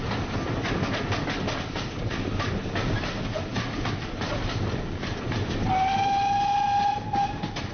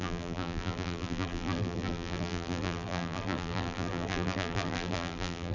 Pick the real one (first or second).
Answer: first